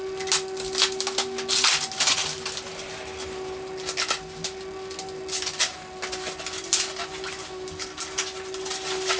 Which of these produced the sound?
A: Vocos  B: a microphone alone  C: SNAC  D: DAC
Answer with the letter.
B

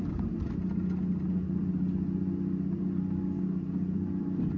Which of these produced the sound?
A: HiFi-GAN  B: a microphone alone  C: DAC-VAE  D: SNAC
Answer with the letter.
B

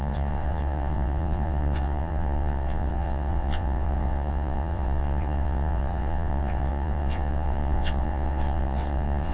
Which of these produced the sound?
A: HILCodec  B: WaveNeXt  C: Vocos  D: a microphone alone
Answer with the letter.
B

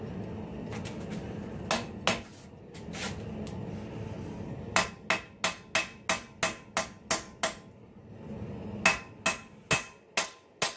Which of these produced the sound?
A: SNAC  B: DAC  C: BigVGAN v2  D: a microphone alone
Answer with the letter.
D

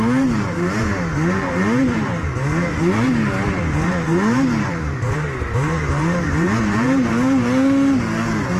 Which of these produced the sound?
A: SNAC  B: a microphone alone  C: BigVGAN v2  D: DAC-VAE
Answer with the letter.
C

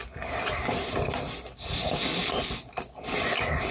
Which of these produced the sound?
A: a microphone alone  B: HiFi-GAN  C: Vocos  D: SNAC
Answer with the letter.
A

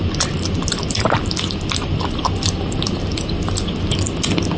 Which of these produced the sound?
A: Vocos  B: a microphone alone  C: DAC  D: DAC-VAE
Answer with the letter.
B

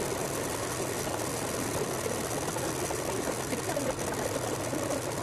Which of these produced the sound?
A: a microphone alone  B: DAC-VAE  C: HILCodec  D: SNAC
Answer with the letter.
A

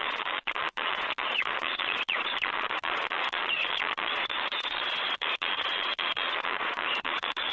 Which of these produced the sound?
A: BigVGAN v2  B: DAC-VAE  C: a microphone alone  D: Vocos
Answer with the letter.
D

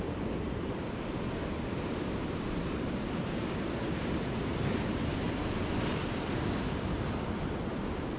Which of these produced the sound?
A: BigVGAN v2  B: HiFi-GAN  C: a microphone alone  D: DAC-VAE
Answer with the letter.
A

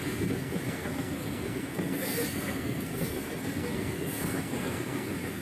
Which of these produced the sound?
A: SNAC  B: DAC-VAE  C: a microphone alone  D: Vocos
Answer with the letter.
A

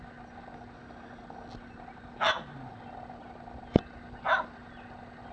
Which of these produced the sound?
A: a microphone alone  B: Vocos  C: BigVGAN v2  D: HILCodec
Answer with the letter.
A